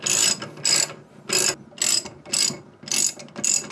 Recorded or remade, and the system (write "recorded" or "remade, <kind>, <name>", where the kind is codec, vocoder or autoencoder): recorded